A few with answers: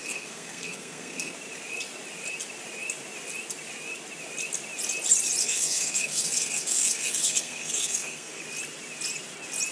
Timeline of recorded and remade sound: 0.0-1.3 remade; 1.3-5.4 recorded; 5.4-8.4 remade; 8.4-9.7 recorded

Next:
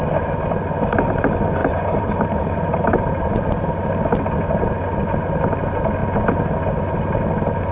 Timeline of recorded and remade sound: 0.0-1.6 recorded; 1.6-3.2 remade; 3.2-7.7 recorded

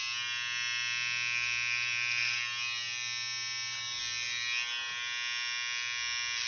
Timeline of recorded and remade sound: 0.0-6.5 recorded

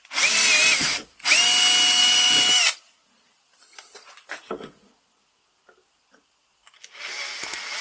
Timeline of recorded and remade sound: 0.0-7.8 recorded

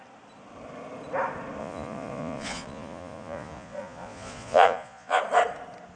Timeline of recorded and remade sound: 0.0-1.6 recorded; 1.6-5.2 remade; 5.2-6.0 recorded